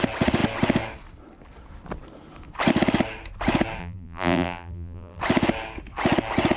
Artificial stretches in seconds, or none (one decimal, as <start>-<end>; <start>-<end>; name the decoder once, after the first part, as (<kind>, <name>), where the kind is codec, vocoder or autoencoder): 3.8-5.2 (vocoder, BigVGAN v2)